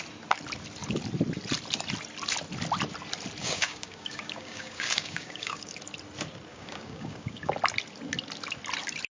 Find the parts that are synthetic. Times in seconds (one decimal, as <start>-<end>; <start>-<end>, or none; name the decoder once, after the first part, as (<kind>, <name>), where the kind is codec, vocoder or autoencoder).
3.4-5.7 (codec, DAC); 6.5-7.5